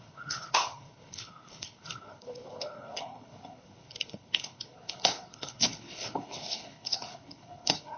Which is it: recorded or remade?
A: remade